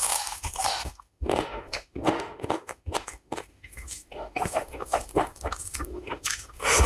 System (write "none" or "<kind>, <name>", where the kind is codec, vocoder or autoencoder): autoencoder, DAC-VAE